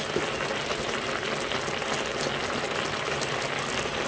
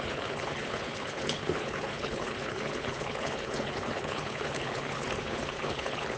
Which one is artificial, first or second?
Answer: second